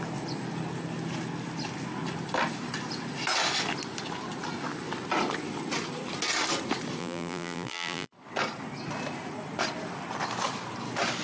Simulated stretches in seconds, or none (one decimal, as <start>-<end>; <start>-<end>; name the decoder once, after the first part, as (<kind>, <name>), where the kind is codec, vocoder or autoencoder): 7.0-8.1 (vocoder, BigVGAN v2)